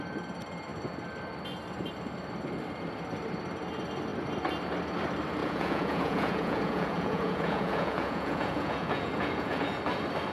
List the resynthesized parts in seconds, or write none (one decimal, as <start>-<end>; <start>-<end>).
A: 5.4-9.8